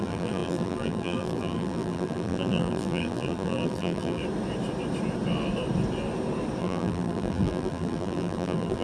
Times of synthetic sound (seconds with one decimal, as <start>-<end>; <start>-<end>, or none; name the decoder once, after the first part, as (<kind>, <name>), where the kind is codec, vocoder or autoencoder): 0.0-4.2 (vocoder, BigVGAN v2); 6.6-8.8

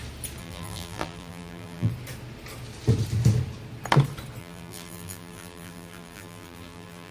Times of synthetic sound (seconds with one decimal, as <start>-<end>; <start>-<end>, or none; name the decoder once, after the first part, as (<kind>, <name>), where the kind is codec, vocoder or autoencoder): 0.4-1.9 (vocoder, BigVGAN v2); 4.4-7.1